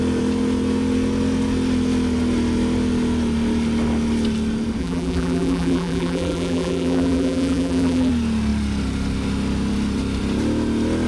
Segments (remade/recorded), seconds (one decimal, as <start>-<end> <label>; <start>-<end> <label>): 0.0-4.8 recorded; 4.8-8.1 remade; 8.1-11.1 recorded